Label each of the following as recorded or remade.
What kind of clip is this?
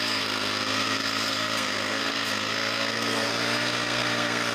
remade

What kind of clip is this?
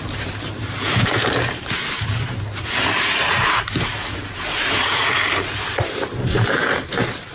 remade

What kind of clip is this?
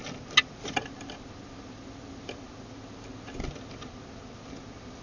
recorded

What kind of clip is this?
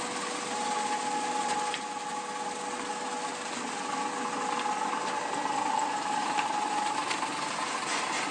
recorded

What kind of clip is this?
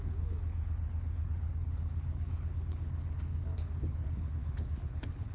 remade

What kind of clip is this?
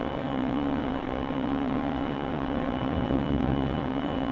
remade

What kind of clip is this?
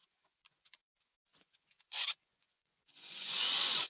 remade